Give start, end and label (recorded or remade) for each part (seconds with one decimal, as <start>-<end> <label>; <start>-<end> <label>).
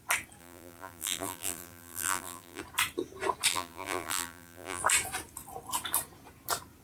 0.0-0.4 recorded; 0.4-2.6 remade; 2.6-3.5 recorded; 3.5-4.8 remade; 4.8-6.8 recorded